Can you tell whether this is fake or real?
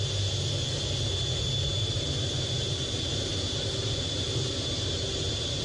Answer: real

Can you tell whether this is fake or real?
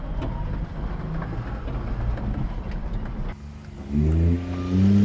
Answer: real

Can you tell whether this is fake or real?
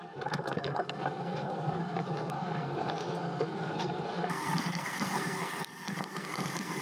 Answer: fake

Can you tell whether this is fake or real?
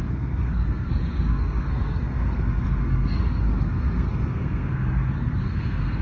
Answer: fake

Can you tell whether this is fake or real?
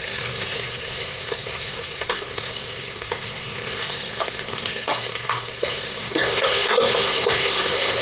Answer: fake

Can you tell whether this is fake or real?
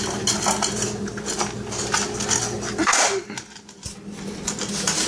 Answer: real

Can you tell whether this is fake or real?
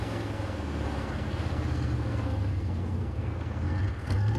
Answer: fake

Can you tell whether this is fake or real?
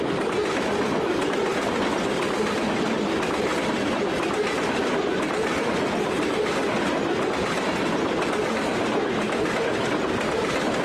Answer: real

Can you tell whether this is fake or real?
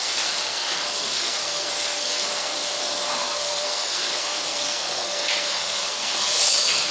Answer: fake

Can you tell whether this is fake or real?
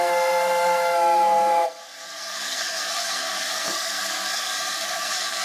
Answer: fake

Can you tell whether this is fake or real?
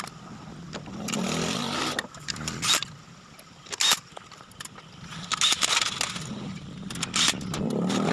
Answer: real